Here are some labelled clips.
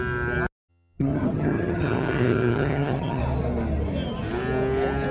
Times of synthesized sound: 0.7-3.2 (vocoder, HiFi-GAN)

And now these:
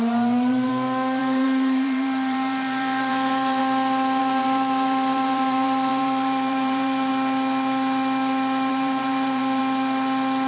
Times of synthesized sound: 0.0-0.7 (vocoder, BigVGAN v2); 1.2-3.6; 4.2-7.1; 8.7-9.6

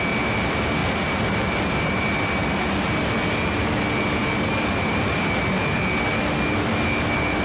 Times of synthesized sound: 0.8-2.0 (vocoder, BigVGAN v2); 4.2-5.4

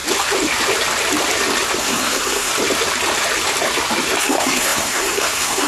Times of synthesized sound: 1.8-2.5 (codec, SNAC); 4.2-5.7

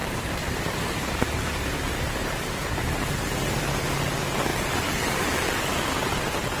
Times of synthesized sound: 0.0-4.0 (vocoder, BigVGAN v2)

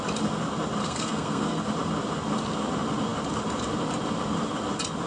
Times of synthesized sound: 0.8-1.6 (codec, SNAC)